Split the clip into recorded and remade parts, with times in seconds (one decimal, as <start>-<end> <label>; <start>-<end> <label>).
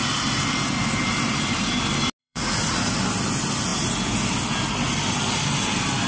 0.0-2.2 recorded; 2.2-2.9 remade; 2.9-6.1 recorded